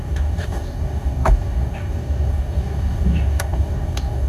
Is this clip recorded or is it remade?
remade